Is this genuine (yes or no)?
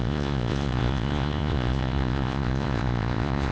no